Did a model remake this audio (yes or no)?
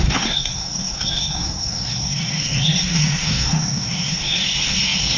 yes